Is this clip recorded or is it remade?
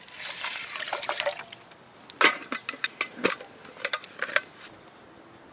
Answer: recorded